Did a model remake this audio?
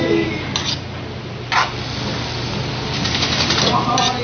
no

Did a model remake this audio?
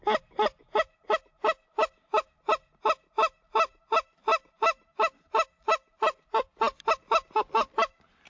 no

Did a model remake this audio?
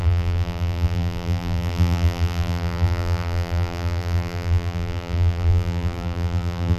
yes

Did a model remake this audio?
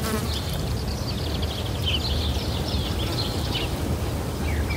no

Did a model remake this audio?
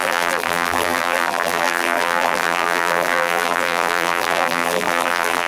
yes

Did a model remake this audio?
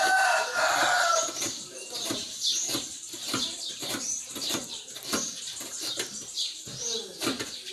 yes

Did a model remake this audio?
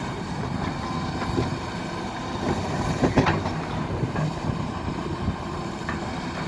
yes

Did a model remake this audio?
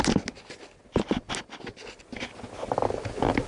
no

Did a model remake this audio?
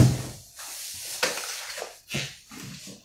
no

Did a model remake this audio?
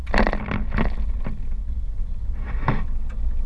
no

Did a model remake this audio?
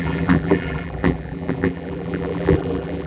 yes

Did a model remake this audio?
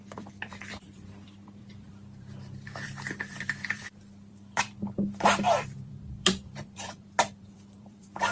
yes